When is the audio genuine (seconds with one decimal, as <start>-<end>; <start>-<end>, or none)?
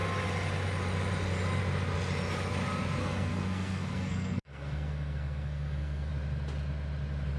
0.0-3.0; 6.1-7.4